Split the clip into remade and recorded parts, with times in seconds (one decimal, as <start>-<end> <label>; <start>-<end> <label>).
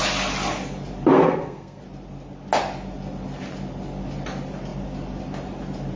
0.0-1.1 recorded; 1.1-1.8 remade; 1.8-6.0 recorded